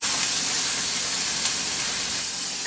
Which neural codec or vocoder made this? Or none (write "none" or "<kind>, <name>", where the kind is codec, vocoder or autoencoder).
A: none